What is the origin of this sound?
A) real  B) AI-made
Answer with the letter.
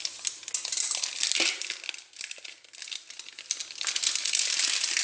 A